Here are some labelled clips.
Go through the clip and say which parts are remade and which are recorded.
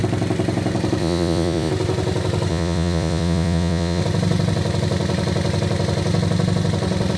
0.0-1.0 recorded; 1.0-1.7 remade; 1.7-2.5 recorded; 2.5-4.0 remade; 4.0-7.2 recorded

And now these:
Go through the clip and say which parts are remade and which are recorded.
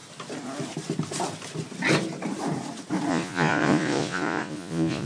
0.0-3.1 recorded; 3.1-5.1 remade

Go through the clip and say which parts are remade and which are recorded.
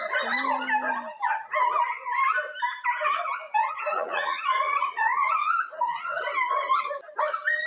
0.0-3.6 recorded; 3.6-6.2 remade; 6.2-7.7 recorded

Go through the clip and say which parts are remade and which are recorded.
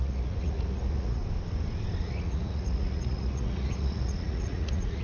0.0-1.2 remade; 1.2-2.0 recorded; 2.0-5.0 remade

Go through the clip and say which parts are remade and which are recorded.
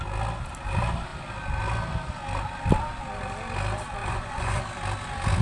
0.0-4.0 recorded; 4.0-4.6 remade; 4.6-5.4 recorded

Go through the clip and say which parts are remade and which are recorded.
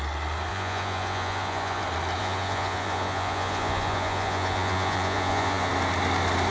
0.0-0.5 recorded; 0.5-1.8 remade; 1.8-2.2 recorded; 2.2-5.7 remade; 5.7-6.5 recorded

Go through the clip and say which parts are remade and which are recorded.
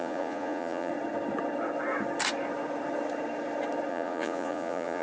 0.0-0.9 remade; 0.9-3.9 recorded; 3.9-5.0 remade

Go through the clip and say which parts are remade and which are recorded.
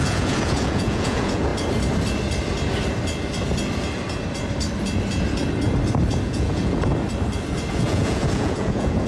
0.0-1.5 remade; 1.5-6.2 recorded; 6.2-6.9 remade; 6.9-7.7 recorded; 7.7-9.1 remade